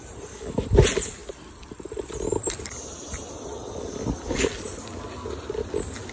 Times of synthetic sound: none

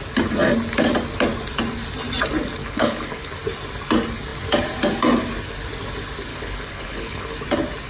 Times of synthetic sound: 2.6-3.3 (codec, HILCodec); 6.3-7.3

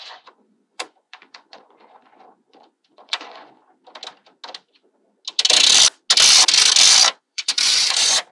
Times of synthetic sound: 0.0-3.6 (vocoder, Vocos); 7.2-8.3

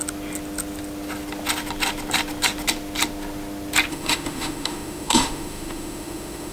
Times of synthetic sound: 3.9-6.5 (autoencoder, DAC-VAE)

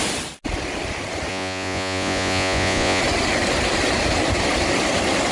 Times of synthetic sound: 1.3-3.0 (vocoder, Vocos)

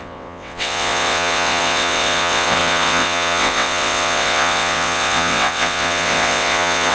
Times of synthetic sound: 0.0-6.9 (vocoder, WaveNeXt)

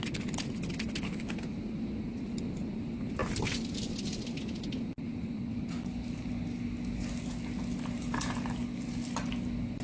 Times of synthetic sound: none

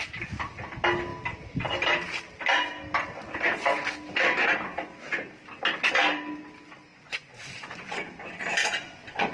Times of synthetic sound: 6.9-9.3 (vocoder, Vocos)